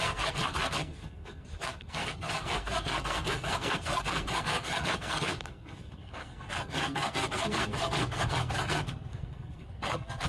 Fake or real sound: fake